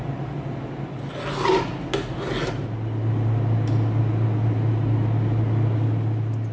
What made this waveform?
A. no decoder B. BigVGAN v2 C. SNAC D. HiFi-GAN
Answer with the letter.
A